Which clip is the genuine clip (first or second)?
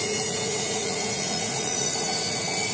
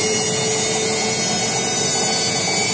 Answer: second